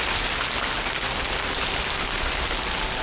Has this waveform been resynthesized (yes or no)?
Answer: no